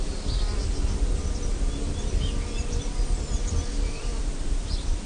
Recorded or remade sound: recorded